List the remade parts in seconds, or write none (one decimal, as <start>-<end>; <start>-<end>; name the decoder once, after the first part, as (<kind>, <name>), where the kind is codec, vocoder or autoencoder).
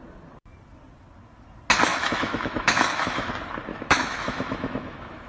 1.9-3.3 (autoencoder, DAC-VAE); 3.7-5.3